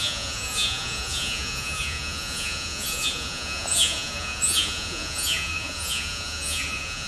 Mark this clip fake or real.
fake